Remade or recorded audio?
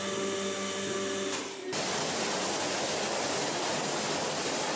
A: recorded